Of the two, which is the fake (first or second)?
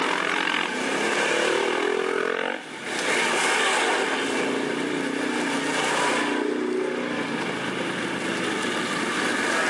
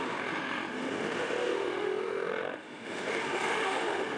second